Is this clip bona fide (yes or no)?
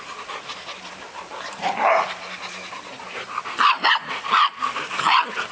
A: yes